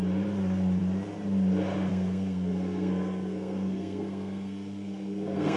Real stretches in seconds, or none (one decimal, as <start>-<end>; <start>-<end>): 0.0-1.9